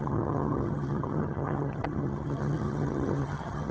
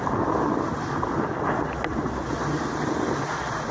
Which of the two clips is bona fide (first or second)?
second